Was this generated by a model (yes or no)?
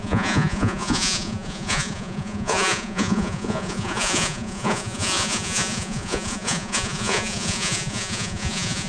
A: yes